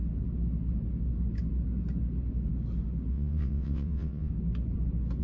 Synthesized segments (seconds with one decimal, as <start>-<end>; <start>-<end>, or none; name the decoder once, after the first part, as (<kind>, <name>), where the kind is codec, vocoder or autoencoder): 3.1-4.3 (vocoder, WaveNeXt)